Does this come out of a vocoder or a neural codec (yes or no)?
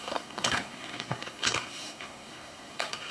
yes